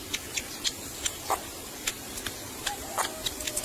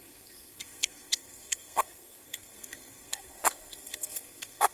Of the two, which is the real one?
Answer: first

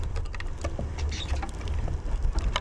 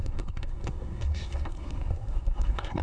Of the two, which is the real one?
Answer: first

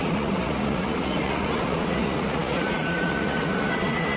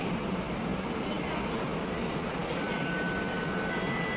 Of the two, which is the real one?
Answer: second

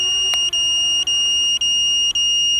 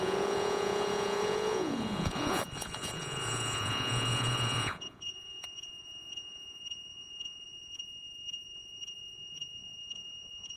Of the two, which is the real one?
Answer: first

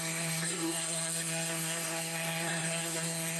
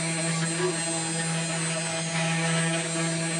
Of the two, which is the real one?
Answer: second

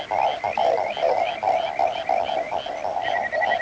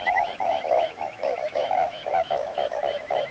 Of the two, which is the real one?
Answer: first